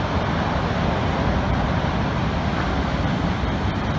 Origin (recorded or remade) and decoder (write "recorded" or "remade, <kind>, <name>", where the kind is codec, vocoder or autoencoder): remade, vocoder, BigVGAN v2